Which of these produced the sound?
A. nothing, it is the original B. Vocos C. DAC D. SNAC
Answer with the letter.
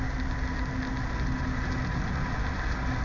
A